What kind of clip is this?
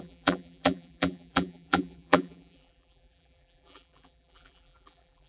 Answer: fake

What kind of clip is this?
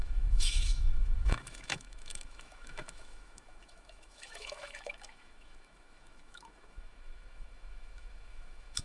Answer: fake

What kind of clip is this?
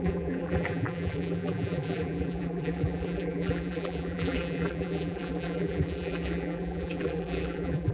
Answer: fake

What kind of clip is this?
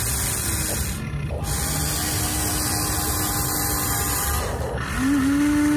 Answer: real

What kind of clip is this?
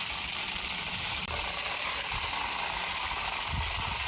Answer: fake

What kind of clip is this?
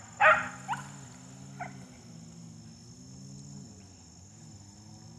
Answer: real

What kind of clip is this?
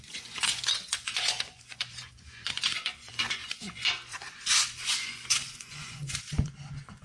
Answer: fake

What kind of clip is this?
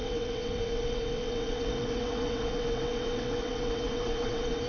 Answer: fake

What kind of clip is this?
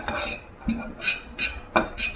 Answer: real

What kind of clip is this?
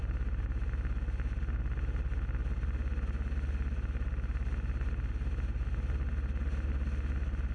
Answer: real